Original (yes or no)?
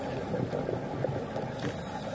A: yes